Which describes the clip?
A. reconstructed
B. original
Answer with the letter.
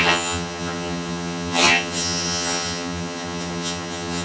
A